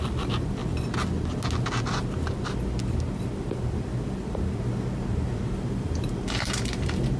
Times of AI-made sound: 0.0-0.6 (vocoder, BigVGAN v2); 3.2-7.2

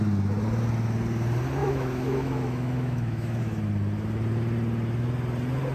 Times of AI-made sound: 1.6-3.4 (autoencoder, DAC-VAE)

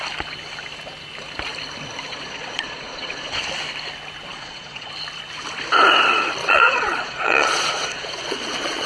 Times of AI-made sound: 2.1-3.4 (vocoder, Vocos); 4.3-4.9; 6.4-8.9

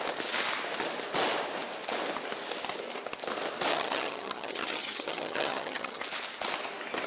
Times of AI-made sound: 3.7-6.0 (vocoder, HiFi-GAN)

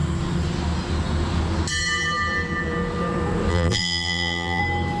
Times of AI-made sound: 3.5-4.6 (vocoder, BigVGAN v2)

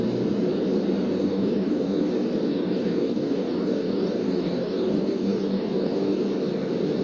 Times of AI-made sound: 1.2-2.1 (codec, DAC); 2.5-6.2

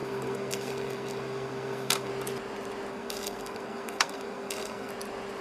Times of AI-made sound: 0.0-2.1 (codec, SNAC); 2.9-4.9